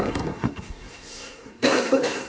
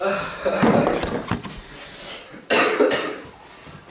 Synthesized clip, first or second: first